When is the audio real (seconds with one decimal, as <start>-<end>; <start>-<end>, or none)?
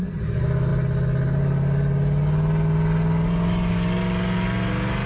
0.0-5.1